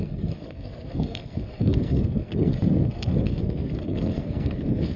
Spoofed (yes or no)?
yes